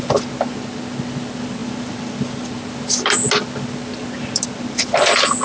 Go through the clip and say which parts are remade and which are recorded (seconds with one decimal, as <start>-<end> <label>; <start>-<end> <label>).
0.0-5.4 recorded